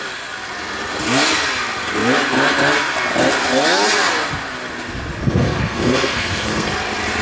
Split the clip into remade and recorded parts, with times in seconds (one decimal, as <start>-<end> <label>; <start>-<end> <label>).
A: 0.0-5.2 recorded; 5.2-6.7 remade; 6.7-7.2 recorded